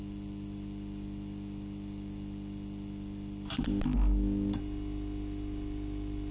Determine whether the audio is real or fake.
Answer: real